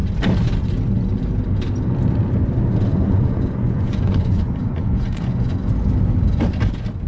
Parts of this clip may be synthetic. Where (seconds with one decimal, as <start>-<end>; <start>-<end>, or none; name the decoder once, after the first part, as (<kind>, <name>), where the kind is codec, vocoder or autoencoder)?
2.9-5.7 (vocoder, Vocos)